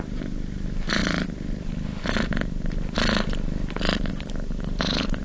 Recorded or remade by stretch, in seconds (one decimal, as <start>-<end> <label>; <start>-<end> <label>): 0.0-1.0 remade; 1.0-4.1 recorded; 4.1-5.2 remade